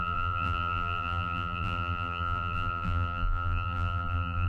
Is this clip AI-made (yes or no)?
yes